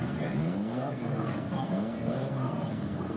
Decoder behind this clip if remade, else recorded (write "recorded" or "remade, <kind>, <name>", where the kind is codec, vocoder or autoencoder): remade, codec, SNAC